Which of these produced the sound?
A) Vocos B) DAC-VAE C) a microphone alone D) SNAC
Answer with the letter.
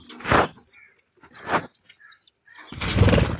C